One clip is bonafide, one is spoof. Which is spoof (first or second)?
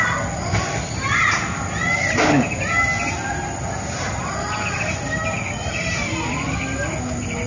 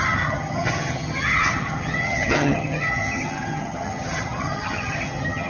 second